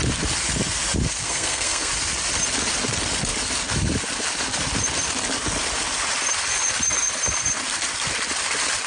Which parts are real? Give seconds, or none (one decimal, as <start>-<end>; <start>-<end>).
0.0-1.2; 1.9-8.9